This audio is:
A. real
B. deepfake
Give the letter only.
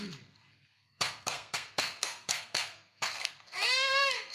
B